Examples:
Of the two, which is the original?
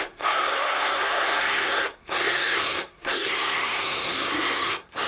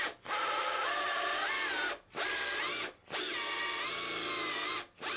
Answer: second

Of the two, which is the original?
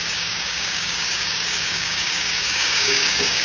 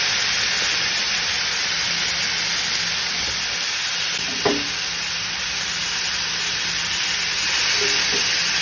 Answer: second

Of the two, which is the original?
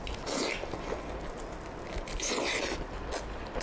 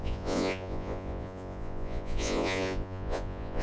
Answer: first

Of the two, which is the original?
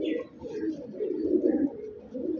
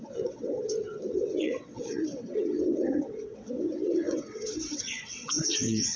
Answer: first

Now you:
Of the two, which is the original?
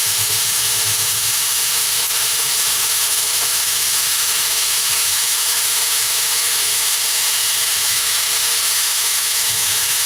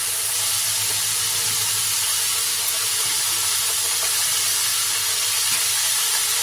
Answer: second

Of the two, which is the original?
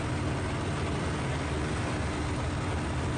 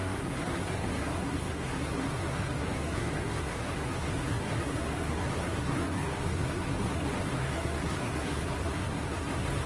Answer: first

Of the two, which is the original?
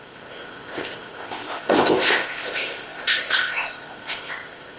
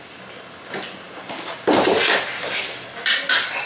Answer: second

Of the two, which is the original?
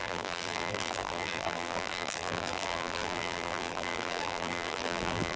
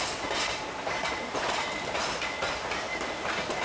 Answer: second